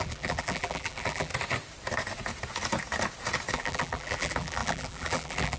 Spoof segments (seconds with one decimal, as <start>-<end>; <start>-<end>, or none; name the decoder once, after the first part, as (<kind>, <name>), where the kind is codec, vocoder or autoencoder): 0.0-1.3 (vocoder, BigVGAN v2); 3.5-5.6